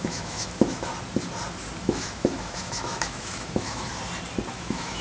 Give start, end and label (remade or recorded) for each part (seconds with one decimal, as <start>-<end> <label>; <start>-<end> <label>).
0.0-0.9 remade; 0.9-1.8 recorded; 1.8-3.9 remade; 3.9-4.5 recorded; 4.5-5.0 remade